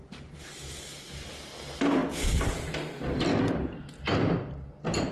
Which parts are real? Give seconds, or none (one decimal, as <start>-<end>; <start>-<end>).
0.0-5.1